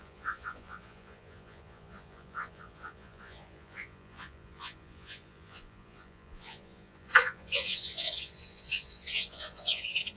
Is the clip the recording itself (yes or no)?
no